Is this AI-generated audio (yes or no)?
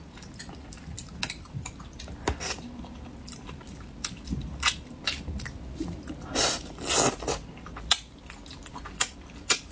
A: no